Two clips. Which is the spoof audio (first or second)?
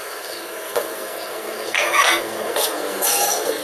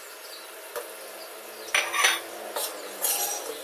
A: first